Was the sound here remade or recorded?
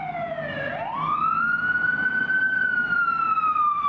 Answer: recorded